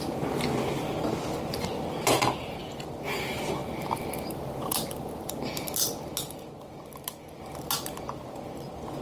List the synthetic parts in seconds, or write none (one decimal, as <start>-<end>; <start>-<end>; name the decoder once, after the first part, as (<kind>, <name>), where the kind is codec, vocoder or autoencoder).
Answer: 3.6-5.3 (vocoder, BigVGAN v2)

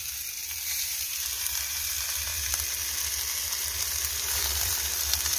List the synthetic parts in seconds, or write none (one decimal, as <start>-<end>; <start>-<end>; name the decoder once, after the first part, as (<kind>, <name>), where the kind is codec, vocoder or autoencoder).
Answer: 0.0-2.3 (vocoder, BigVGAN v2); 3.9-5.4

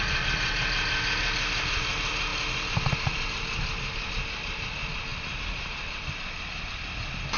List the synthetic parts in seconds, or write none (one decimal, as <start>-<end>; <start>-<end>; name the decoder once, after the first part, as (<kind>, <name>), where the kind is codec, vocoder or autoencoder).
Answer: none

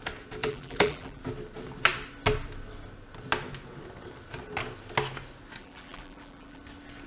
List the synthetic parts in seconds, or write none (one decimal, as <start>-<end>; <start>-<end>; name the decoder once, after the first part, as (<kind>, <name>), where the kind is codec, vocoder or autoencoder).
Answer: 0.4-1.2 (vocoder, BigVGAN v2); 5.6-6.6

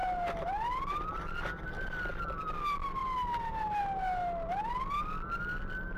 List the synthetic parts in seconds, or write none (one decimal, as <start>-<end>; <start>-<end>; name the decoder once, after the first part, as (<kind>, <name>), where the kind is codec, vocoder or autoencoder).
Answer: none

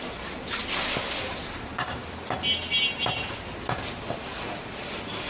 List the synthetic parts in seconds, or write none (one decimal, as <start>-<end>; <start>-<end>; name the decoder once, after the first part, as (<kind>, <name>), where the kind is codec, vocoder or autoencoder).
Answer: 0.0-0.6 (vocoder, BigVGAN v2); 1.2-2.0